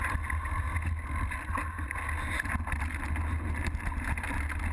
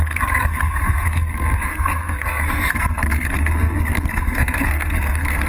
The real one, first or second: first